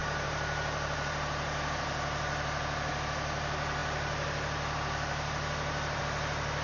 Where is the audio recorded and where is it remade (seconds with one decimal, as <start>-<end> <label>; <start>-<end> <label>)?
0.0-6.6 remade